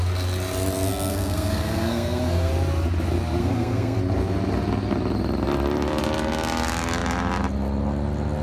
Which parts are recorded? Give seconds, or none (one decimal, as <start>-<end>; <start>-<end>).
0.0-0.9; 2.5-3.4; 4.0-8.4